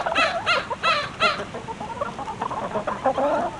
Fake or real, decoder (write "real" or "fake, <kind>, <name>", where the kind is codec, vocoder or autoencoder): real